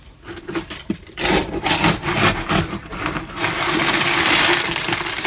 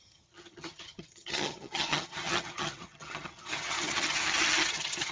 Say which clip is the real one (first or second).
first